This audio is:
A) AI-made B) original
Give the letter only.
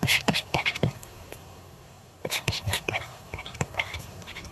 A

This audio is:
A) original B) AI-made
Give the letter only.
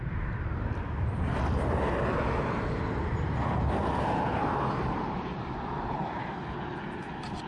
A